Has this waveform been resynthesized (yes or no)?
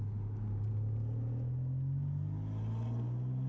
no